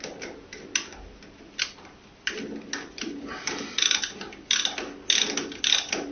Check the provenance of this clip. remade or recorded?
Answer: recorded